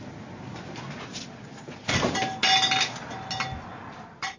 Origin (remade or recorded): recorded